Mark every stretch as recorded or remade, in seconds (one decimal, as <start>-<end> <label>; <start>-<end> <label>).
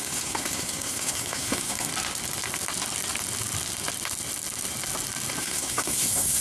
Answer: 0.0-1.9 remade; 1.9-5.4 recorded; 5.4-6.4 remade